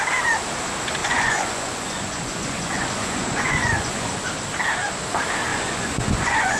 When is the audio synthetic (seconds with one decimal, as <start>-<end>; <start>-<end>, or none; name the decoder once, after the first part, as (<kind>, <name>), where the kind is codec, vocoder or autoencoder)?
1.0-4.1 (vocoder, Vocos); 5.5-6.6